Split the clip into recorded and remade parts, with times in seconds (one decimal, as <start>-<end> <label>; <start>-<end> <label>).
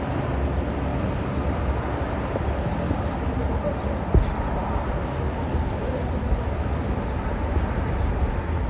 0.0-8.7 recorded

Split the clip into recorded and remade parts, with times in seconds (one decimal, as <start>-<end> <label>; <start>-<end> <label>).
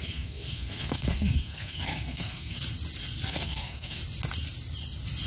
0.0-2.6 remade; 2.6-3.3 recorded; 3.3-4.0 remade; 4.0-5.3 recorded